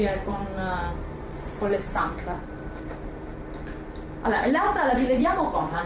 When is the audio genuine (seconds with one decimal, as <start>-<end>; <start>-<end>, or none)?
0.4-1.2; 2.6-4.9